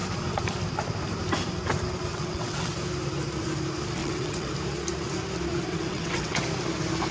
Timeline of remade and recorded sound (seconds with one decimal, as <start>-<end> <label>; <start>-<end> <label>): 0.0-2.1 recorded; 2.1-2.7 remade; 2.7-4.0 recorded; 4.0-4.5 remade; 4.5-5.7 recorded; 5.7-6.4 remade; 6.4-7.1 recorded